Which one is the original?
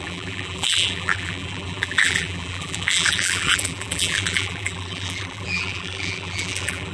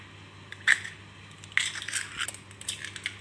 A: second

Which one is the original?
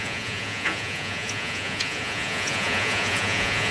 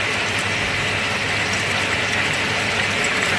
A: second